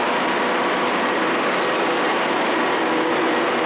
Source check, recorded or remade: recorded